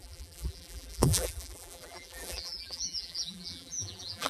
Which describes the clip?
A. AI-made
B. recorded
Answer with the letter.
A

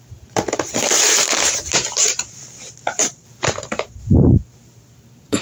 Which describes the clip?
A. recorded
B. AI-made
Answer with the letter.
B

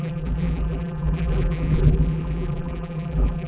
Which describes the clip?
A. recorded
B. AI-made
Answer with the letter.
B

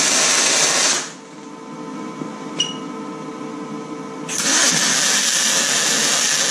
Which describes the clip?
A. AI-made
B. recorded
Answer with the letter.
B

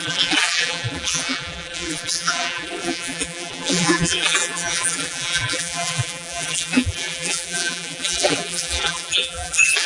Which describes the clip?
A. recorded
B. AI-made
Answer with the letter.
B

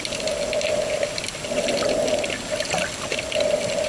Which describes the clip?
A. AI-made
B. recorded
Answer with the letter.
B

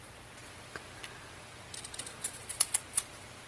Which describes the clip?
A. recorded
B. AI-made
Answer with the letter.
A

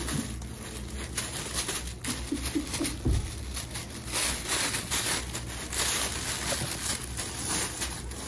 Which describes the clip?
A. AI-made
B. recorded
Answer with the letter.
B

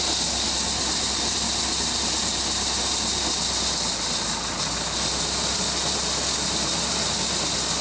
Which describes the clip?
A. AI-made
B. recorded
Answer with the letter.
B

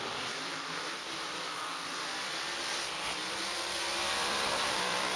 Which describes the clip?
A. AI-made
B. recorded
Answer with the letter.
A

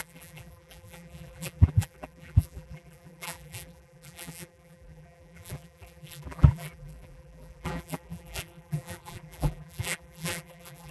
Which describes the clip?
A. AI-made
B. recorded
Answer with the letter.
A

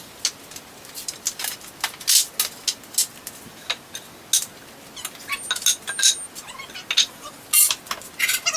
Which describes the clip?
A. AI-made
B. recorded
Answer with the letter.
B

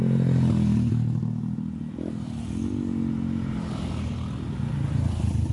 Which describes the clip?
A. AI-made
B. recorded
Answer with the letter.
B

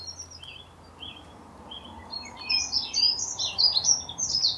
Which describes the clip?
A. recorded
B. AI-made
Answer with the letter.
A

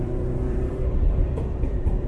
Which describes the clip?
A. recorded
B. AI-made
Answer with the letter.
B